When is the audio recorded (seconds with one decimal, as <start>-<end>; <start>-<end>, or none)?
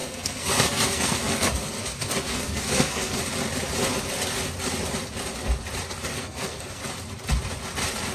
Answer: 3.2-6.1; 6.8-8.1